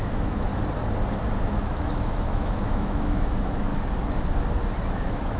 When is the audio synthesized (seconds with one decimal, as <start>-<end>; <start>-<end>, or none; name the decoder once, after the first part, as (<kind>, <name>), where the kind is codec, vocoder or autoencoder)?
0.0-0.5 (autoencoder, DAC-VAE); 1.4-3.7; 4.9-5.4